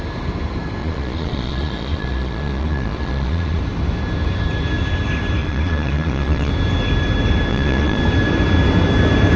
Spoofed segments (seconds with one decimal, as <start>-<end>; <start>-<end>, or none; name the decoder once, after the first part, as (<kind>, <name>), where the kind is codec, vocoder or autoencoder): 0.8-3.6 (vocoder, Vocos); 5.4-6.5; 7.5-8.0